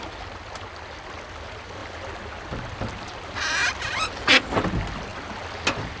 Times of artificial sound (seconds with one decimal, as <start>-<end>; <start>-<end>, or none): none

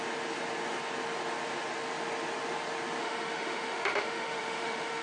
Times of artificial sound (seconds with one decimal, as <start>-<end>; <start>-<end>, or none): 3.0-5.0